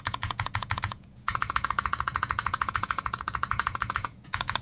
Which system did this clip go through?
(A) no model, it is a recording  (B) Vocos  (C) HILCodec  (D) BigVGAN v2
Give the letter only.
B